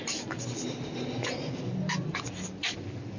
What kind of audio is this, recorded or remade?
recorded